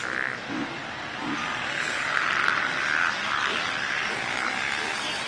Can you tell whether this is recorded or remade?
recorded